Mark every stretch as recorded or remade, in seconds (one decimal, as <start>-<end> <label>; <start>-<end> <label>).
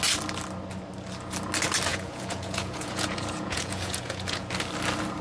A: 0.0-1.9 recorded; 1.9-4.5 remade; 4.5-5.2 recorded